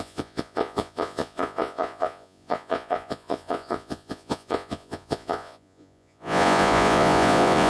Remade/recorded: remade